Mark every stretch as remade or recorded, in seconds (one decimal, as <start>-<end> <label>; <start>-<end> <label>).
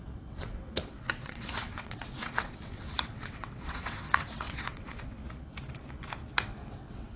0.0-5.2 remade; 5.2-6.3 recorded; 6.3-7.2 remade